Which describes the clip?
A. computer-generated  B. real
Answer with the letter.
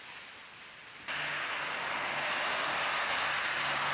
B